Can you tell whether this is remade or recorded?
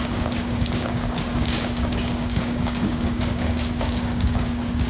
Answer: remade